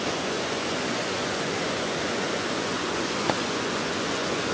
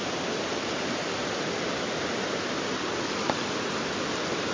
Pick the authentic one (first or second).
second